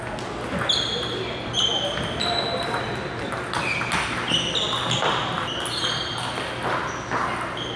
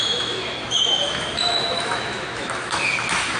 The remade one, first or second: second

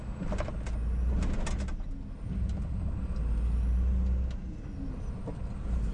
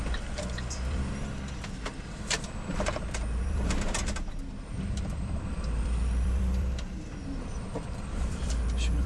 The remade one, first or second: second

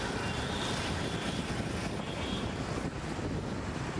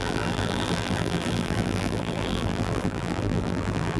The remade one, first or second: second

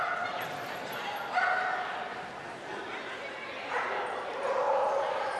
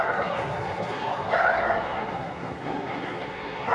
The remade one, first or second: second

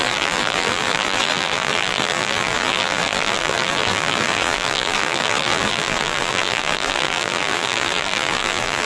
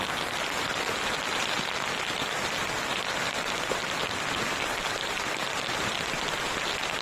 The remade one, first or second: first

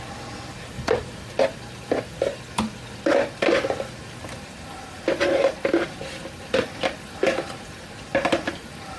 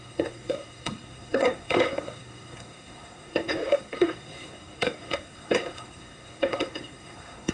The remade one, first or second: second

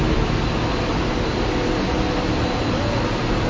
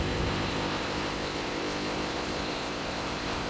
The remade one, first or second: second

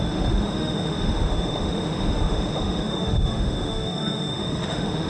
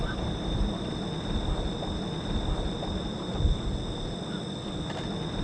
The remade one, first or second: first